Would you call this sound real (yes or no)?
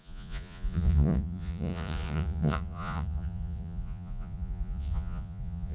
no